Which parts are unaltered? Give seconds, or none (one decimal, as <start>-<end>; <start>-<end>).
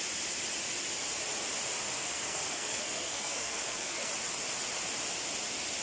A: 0.0-2.0; 4.1-5.8